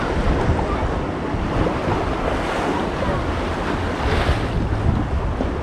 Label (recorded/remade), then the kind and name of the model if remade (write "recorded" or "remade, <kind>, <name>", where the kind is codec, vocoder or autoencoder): recorded